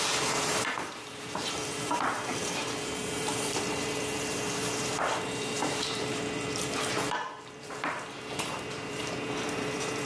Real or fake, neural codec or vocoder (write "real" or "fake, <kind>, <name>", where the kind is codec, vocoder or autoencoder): fake, vocoder, BigVGAN v2